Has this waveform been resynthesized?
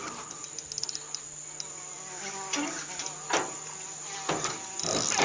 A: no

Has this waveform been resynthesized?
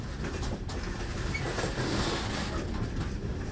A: no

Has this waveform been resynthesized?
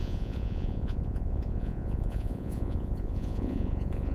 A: yes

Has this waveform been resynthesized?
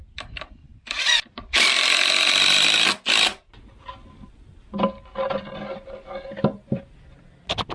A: no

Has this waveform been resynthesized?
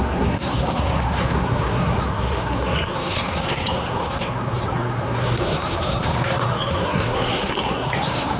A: yes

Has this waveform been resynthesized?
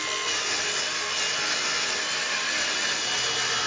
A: no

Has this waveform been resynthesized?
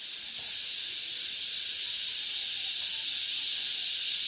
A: no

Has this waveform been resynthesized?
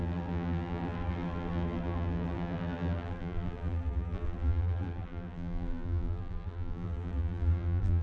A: yes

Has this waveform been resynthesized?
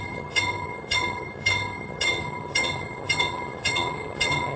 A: yes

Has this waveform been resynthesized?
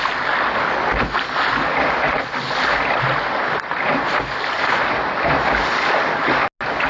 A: no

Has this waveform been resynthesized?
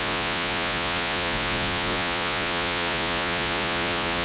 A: yes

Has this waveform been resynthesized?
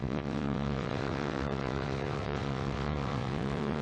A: yes